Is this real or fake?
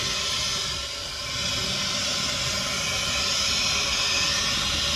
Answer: real